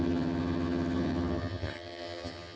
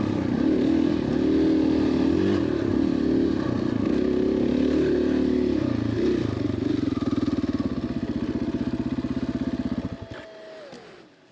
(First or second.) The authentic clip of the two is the second